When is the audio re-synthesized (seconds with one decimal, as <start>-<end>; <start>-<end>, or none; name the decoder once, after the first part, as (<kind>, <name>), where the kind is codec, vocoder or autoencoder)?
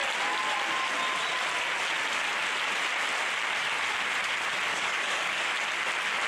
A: 4.7-5.5 (codec, DAC)